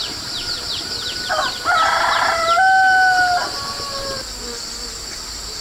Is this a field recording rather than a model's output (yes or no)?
yes